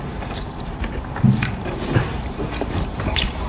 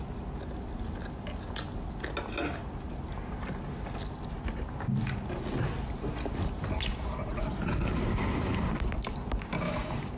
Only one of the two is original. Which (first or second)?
second